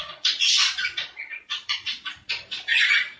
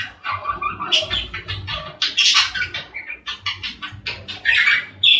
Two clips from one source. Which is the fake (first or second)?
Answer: first